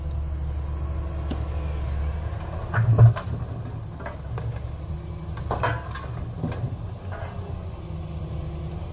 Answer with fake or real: real